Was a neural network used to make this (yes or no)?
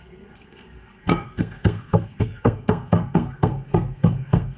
yes